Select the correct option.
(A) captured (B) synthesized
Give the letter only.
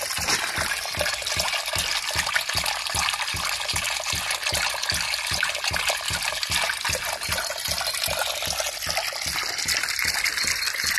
A